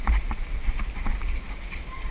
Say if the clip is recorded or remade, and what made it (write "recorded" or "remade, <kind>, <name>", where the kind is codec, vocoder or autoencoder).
remade, vocoder, BigVGAN v2